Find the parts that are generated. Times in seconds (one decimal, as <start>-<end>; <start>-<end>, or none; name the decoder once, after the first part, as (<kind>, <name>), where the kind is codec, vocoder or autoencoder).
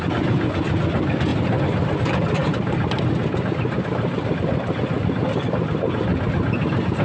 none